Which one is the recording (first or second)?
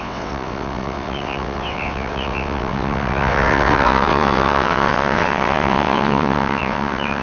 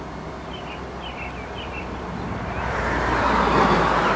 second